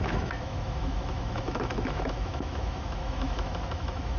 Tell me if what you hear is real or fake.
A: fake